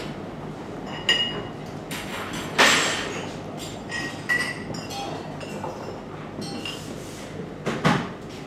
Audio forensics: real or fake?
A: real